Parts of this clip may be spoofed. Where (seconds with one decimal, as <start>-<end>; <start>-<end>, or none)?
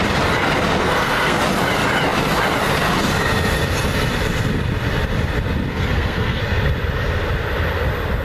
0.8-1.4; 5.7-6.4